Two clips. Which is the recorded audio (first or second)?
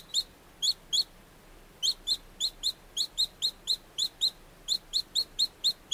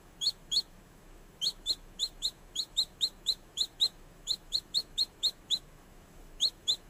first